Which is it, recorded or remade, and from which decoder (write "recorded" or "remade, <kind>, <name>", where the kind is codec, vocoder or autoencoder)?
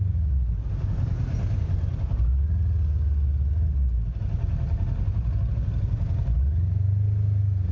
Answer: recorded